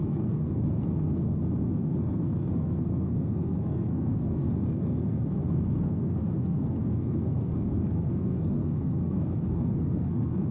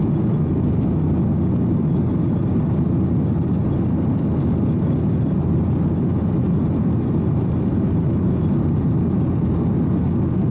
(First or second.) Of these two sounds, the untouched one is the second